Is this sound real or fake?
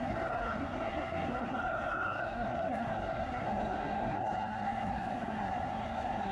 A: fake